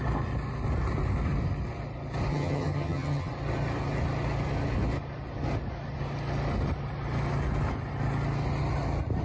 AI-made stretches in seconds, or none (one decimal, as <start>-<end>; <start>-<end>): 2.3-3.3